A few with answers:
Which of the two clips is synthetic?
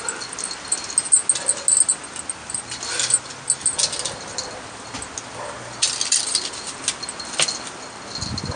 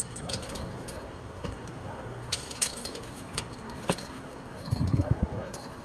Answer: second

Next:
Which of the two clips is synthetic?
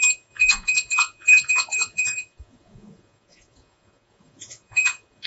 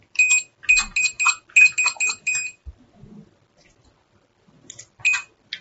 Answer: first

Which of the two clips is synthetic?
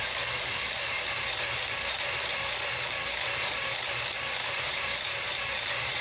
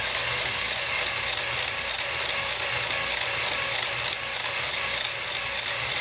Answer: first